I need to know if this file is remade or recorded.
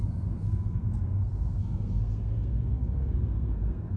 remade